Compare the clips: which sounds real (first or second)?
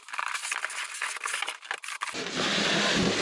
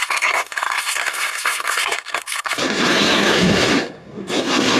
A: first